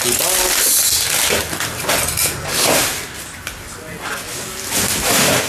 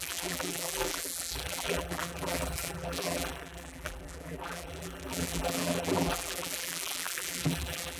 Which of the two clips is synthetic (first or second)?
second